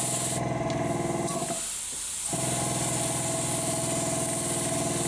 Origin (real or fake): real